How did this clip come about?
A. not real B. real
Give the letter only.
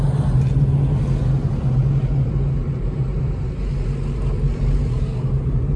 B